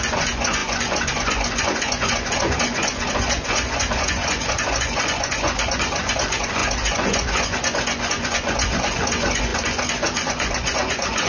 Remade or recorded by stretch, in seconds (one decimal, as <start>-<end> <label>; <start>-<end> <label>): 0.0-11.3 remade